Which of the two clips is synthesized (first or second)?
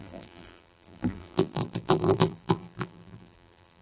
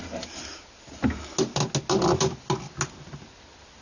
first